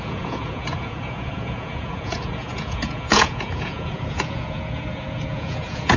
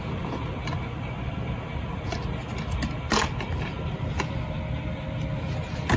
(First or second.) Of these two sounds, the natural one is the second